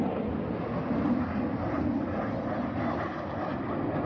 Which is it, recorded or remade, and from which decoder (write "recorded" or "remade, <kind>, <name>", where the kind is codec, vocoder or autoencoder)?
recorded